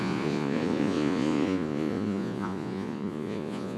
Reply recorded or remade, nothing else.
remade